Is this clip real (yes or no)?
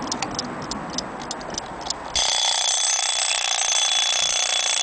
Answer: yes